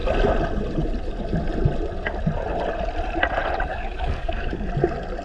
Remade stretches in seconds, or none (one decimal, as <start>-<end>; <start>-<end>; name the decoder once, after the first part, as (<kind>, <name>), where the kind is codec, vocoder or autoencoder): 3.7-4.7 (codec, DAC)